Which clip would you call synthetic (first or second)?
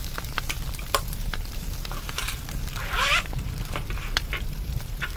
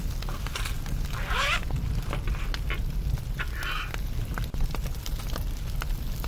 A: first